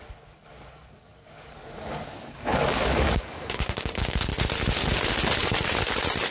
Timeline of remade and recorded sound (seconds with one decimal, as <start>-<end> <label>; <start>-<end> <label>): 0.0-4.3 remade; 4.3-6.3 recorded